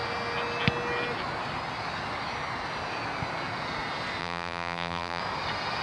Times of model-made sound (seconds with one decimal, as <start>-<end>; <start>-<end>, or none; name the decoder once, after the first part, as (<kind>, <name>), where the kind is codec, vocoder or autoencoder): 4.2-5.2 (vocoder, BigVGAN v2)